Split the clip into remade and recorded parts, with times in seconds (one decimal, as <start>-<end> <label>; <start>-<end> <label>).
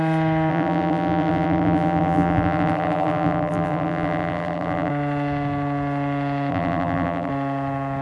0.0-0.5 recorded; 0.5-4.9 remade; 4.9-6.5 recorded; 6.5-7.3 remade; 7.3-8.0 recorded